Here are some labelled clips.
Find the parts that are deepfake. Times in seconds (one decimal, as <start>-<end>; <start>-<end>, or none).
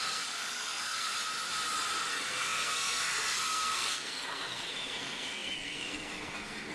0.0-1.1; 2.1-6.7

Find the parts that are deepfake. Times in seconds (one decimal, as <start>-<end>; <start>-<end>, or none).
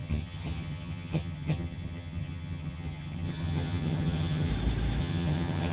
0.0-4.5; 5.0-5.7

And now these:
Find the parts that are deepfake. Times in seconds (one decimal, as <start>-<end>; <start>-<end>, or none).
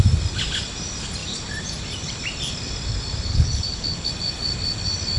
3.3-4.1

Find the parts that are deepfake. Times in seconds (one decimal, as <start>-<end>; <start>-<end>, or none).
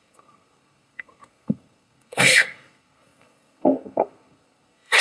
0.0-5.0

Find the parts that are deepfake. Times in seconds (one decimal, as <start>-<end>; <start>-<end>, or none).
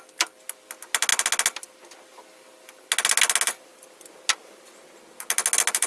none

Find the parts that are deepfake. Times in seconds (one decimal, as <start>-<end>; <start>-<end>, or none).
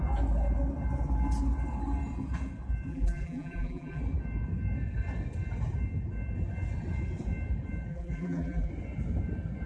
2.9-4.0; 7.9-8.7